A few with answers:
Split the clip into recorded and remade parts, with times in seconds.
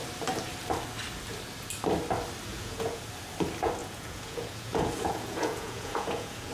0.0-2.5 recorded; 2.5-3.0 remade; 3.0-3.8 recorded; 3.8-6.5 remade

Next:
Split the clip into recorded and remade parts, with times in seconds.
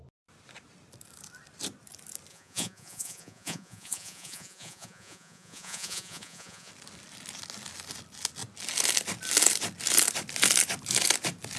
0.0-2.3 recorded; 2.3-6.7 remade; 6.7-11.6 recorded